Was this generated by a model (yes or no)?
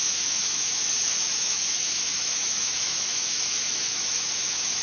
yes